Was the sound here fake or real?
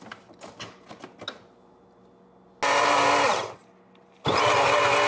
real